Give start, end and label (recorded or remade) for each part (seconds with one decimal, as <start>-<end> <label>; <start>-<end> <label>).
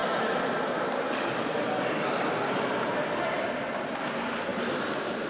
0.0-4.5 recorded; 4.5-5.3 remade